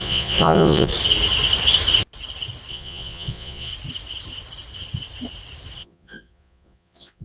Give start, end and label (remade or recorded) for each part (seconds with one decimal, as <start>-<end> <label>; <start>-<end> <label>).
0.0-0.9 remade; 0.9-2.7 recorded; 2.7-3.7 remade; 3.7-5.8 recorded; 5.8-7.2 remade